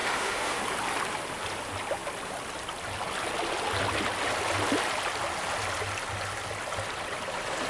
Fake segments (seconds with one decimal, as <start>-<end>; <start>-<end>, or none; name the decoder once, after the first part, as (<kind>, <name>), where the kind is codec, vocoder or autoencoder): 0.0-0.6 (autoencoder, DAC-VAE)